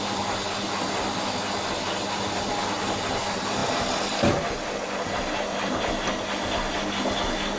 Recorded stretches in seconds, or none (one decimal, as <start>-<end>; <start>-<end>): 0.0-7.6